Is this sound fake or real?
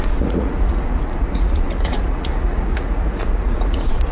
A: fake